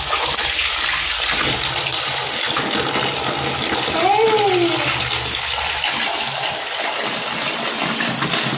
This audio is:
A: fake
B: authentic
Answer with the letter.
B